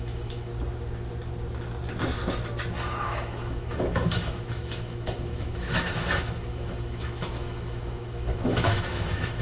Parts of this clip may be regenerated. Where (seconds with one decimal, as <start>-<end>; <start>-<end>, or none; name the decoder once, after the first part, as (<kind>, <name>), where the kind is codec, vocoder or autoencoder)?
0.0-0.5 (autoencoder, DAC-VAE); 2.7-9.4